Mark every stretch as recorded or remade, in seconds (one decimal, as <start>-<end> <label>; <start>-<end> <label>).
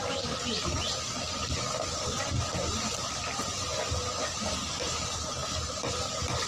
0.0-6.5 recorded